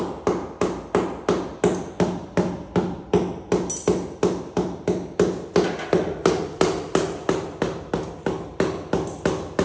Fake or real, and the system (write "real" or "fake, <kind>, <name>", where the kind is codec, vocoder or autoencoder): real